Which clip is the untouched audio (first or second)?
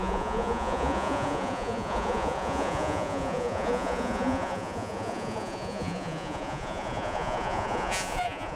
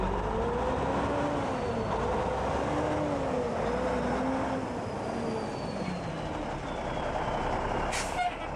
second